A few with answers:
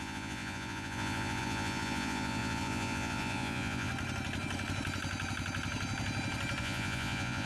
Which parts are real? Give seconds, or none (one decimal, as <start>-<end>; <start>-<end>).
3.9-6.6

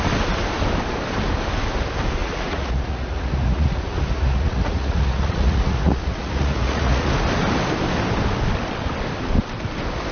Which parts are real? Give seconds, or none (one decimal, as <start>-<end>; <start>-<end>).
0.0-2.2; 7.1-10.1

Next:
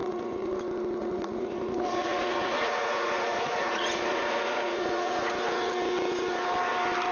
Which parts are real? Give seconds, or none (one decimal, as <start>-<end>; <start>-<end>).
0.6-1.0; 5.3-7.1

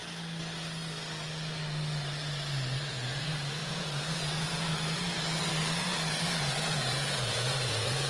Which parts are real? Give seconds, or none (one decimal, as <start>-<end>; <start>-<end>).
0.0-2.9; 4.7-6.4